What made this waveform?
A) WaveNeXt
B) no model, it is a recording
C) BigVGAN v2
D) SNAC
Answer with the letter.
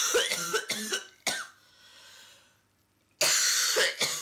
B